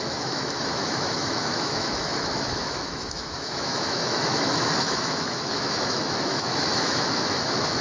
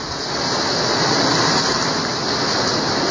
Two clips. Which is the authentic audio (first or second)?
second